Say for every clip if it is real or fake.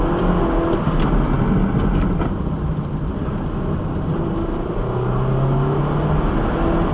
real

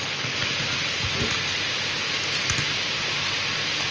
real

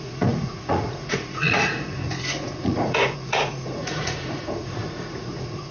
fake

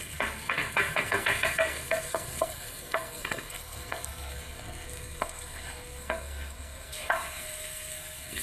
fake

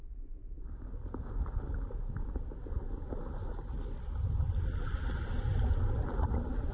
real